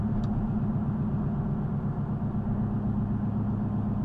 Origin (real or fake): real